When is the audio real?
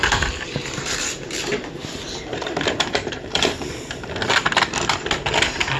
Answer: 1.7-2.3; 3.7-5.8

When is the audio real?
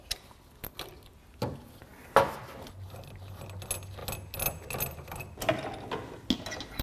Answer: 0.0-6.8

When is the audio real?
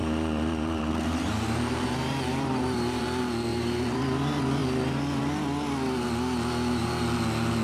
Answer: 3.0-3.5; 4.0-7.6